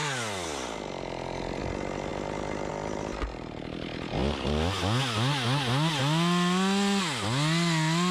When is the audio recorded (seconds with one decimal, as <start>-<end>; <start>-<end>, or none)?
0.0-8.1

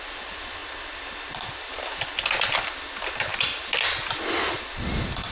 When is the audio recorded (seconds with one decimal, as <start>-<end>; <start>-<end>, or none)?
0.0-5.3

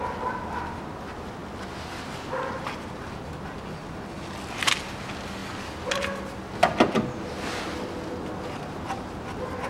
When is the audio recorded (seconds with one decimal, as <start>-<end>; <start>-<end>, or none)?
0.0-9.7

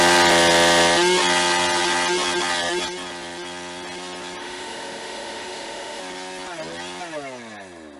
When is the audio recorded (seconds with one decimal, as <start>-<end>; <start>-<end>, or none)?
0.0-4.4; 6.0-8.0

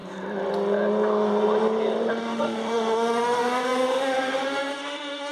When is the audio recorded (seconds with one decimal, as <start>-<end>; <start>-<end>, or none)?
0.0-2.1

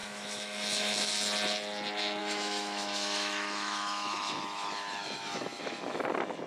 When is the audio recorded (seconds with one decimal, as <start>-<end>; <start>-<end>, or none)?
1.1-2.2; 6.1-6.5

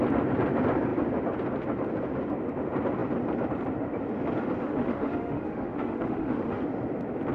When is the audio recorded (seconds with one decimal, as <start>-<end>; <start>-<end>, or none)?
0.0-4.6; 6.6-7.3